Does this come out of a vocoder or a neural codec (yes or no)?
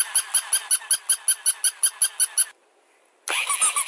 no